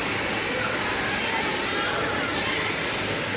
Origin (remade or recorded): recorded